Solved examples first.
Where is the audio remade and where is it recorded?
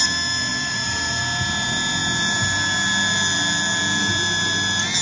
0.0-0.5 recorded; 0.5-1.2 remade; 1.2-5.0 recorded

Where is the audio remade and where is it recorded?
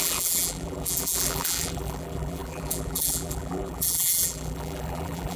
0.0-5.4 remade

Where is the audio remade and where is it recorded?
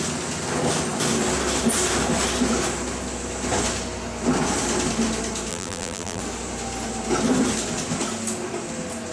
0.0-5.5 recorded; 5.5-6.2 remade; 6.2-9.1 recorded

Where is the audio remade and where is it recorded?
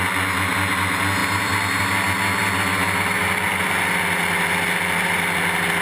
0.0-1.2 recorded; 1.2-1.8 remade; 1.8-5.8 recorded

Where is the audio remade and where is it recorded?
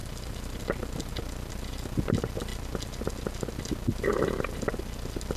0.0-0.6 remade; 0.6-4.1 recorded; 4.1-4.6 remade; 4.6-5.4 recorded